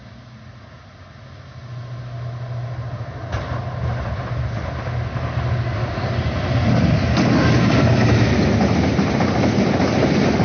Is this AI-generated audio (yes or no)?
no